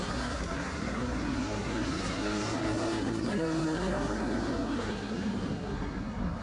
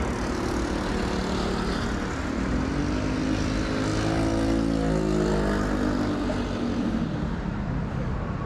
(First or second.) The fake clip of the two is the first